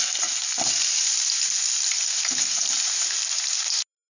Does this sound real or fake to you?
real